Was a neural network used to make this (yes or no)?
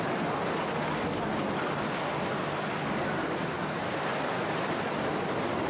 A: no